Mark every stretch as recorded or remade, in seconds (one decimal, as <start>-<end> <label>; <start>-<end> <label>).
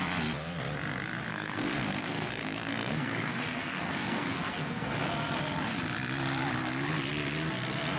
0.0-1.3 recorded; 1.3-5.1 remade; 5.1-8.0 recorded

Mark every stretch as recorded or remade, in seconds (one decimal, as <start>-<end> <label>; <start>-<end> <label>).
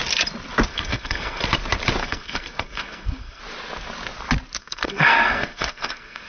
0.0-0.7 recorded; 0.7-1.4 remade; 1.4-2.0 recorded; 2.0-3.4 remade; 3.4-4.6 recorded; 4.6-6.3 remade